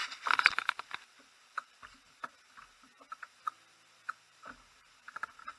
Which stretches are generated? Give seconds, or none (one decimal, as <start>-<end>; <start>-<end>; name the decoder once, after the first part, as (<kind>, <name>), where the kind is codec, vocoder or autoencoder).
0.0-2.3 (vocoder, BigVGAN v2)